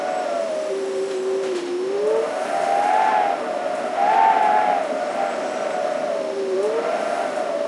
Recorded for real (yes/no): yes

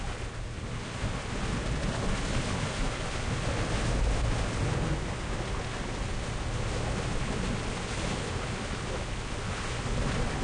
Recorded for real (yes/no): yes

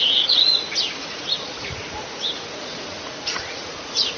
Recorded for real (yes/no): no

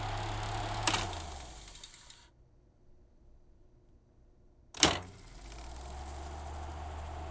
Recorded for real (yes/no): yes